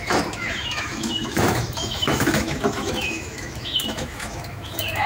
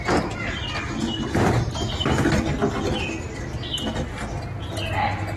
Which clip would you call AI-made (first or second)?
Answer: first